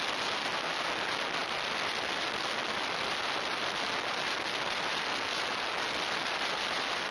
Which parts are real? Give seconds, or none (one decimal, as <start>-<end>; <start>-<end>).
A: 0.0-7.1